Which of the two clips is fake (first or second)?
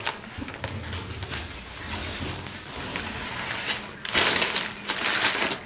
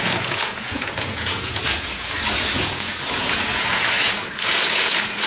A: second